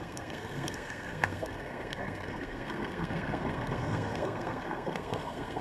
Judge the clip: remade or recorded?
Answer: remade